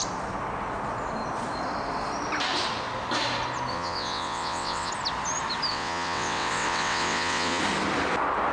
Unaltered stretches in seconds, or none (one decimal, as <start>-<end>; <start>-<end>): 0.0-3.7; 4.9-5.7; 7.6-8.5